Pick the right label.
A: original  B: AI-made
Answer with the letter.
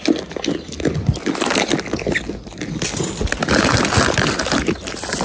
A